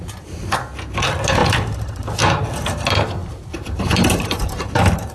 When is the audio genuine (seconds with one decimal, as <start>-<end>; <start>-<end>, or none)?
0.0-1.4; 2.2-3.2